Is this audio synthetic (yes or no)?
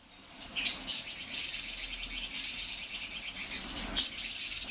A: no